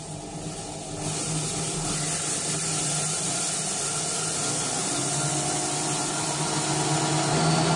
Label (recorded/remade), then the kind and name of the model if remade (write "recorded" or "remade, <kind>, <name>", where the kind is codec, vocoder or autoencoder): recorded